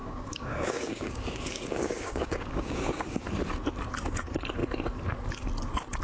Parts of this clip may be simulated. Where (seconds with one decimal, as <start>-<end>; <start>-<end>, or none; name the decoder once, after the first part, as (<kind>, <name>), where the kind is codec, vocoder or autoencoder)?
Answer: 0.0-3.2 (codec, DAC)